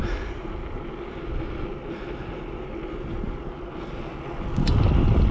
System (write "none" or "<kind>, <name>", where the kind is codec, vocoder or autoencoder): none